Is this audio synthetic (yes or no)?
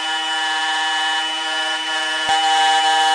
yes